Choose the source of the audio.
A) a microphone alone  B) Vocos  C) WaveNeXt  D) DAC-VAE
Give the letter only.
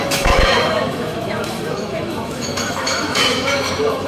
D